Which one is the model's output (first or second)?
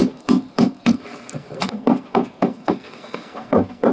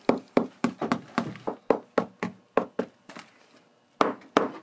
first